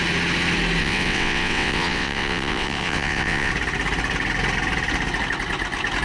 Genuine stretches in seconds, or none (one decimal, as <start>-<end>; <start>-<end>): 0.0-0.8; 3.5-6.0